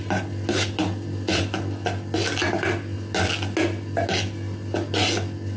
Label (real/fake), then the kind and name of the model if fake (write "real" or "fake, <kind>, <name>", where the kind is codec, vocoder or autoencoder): real